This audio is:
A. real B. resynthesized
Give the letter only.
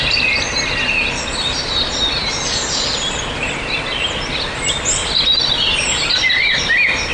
A